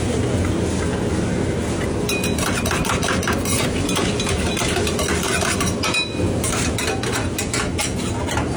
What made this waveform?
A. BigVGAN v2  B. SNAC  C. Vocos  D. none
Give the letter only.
D